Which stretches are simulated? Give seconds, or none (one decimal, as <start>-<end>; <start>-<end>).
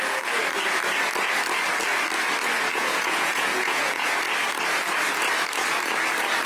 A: 2.7-4.2